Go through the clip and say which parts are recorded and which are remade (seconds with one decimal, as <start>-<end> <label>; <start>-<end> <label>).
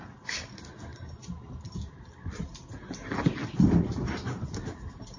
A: 0.0-5.2 recorded